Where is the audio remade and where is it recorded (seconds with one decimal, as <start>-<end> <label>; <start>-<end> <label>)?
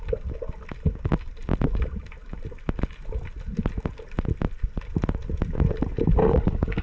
0.0-6.8 recorded